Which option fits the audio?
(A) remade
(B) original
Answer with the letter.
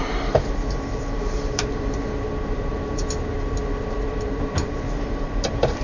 A